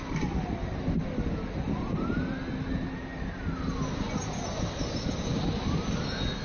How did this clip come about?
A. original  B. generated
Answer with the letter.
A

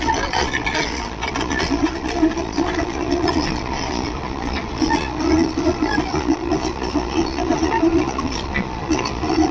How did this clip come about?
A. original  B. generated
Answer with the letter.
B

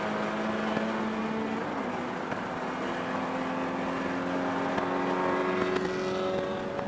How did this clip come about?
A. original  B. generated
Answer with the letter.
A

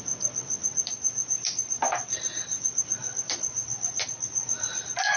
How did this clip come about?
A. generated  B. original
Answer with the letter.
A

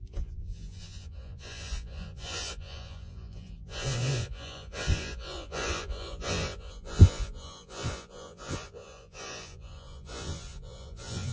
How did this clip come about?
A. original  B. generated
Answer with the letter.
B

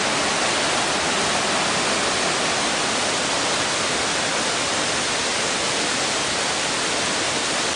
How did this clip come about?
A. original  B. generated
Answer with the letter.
A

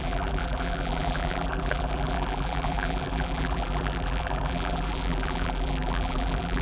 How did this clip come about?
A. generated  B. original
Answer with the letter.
A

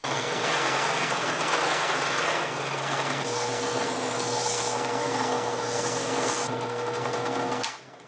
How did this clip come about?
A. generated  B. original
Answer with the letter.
A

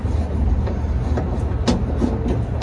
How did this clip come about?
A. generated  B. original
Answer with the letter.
B